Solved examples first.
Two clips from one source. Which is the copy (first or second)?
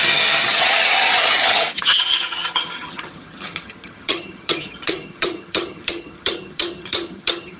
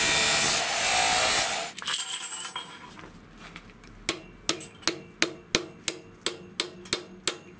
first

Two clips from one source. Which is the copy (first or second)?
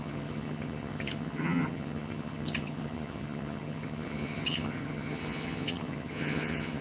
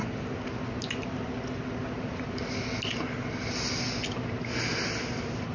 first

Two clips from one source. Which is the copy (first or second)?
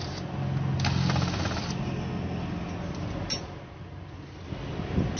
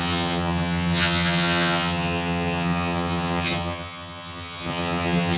second